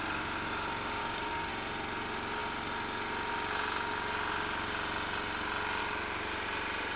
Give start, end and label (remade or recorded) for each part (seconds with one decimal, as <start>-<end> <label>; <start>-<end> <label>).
0.0-1.0 recorded; 1.0-1.5 remade; 1.5-7.0 recorded